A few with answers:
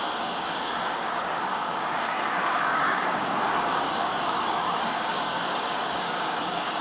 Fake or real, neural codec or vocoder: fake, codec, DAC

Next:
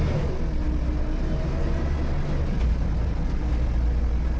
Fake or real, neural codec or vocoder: real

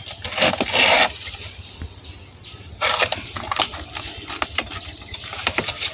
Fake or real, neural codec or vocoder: real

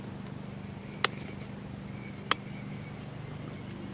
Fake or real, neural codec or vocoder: real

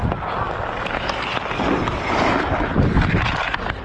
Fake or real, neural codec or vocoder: real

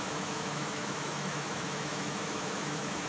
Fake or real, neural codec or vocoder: fake, autoencoder, DAC-VAE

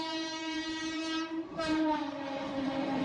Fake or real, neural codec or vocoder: fake, vocoder, BigVGAN v2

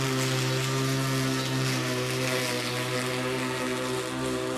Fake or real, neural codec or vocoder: real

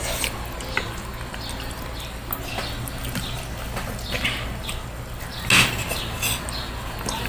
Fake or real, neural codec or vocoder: real